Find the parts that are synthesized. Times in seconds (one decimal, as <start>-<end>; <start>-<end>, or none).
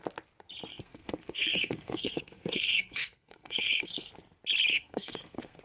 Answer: 0.7-4.1; 4.7-5.6